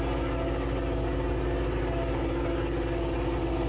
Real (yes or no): yes